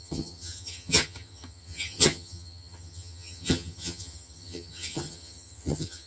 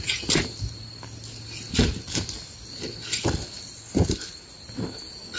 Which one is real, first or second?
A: second